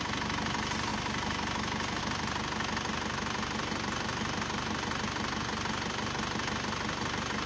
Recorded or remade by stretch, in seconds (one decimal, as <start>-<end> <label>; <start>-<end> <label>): 0.0-7.5 recorded